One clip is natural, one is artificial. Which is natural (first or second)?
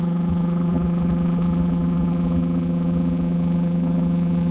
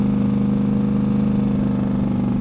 second